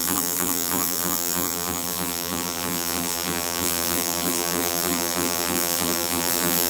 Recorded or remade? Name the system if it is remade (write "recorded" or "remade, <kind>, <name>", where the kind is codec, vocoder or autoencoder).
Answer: remade, vocoder, BigVGAN v2